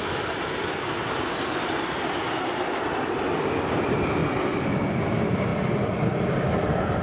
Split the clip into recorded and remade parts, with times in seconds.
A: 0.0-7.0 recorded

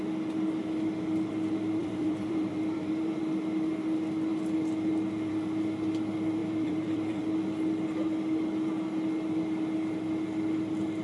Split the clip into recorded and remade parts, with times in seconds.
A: 0.0-1.8 recorded; 1.8-3.2 remade; 3.2-6.4 recorded; 6.4-7.2 remade; 7.2-11.0 recorded

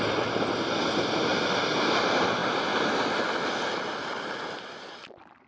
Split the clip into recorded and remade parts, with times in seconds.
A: 0.0-1.3 remade; 1.3-2.0 recorded; 2.0-2.4 remade; 2.4-3.8 recorded; 3.8-5.5 remade

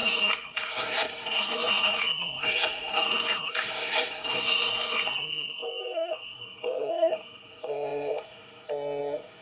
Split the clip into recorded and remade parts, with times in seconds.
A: 0.0-9.4 remade

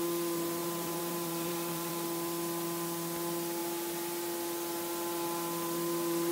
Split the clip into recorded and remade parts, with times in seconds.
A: 0.0-0.6 recorded; 0.6-1.9 remade; 1.9-6.3 recorded

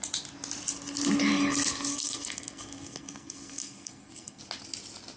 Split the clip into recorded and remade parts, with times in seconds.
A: 0.0-1.9 recorded; 1.9-4.4 remade; 4.4-5.2 recorded

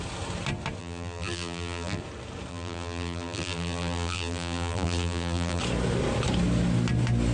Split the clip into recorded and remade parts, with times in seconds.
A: 0.0-0.8 recorded; 0.8-2.0 remade; 2.0-2.5 recorded; 2.5-5.6 remade; 5.6-7.3 recorded

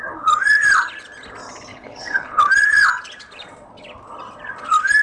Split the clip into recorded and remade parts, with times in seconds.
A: 0.0-1.7 recorded; 1.7-2.4 remade; 2.4-5.0 recorded